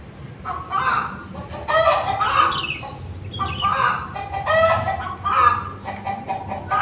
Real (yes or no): yes